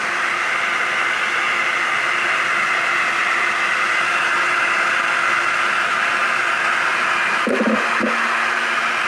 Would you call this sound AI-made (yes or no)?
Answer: no